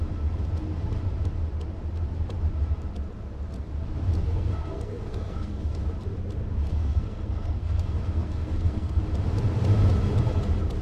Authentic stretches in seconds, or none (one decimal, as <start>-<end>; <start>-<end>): 0.0-4.2; 5.8-6.7; 9.0-10.8